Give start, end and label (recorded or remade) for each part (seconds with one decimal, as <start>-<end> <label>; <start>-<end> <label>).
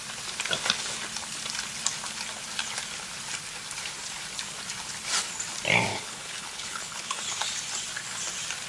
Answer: 0.0-5.9 recorded; 5.9-7.2 remade; 7.2-8.7 recorded